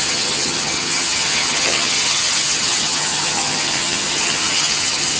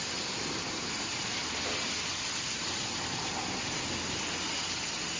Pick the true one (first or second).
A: second